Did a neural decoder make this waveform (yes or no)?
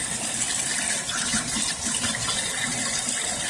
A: no